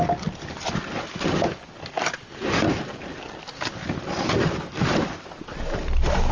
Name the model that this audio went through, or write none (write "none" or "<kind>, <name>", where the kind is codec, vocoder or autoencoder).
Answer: none